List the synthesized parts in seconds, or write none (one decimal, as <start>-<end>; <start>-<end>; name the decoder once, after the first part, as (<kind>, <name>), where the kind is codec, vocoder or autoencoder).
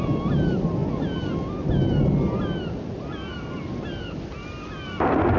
none